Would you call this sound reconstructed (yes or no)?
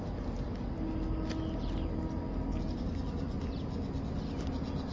no